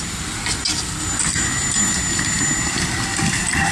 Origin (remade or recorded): recorded